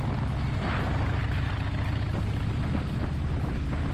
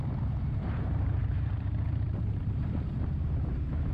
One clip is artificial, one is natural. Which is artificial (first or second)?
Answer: second